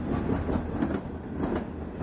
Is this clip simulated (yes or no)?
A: no